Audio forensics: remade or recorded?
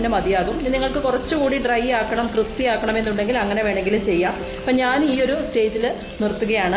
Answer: recorded